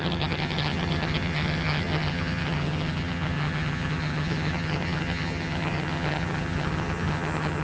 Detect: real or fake fake